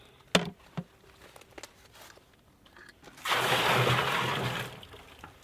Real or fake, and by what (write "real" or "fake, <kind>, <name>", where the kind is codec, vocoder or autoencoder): real